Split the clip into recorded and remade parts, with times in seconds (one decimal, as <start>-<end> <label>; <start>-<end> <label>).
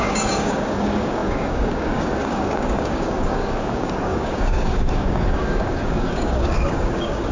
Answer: 0.0-7.3 remade